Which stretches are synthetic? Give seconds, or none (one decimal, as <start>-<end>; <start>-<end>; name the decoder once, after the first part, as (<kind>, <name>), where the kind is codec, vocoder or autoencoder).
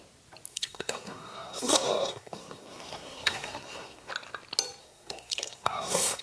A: 0.5-4.1 (codec, SNAC); 4.8-6.2